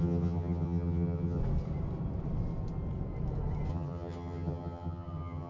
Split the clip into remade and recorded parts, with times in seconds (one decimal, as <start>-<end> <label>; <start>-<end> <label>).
0.0-1.4 remade; 1.4-3.7 recorded; 3.7-5.5 remade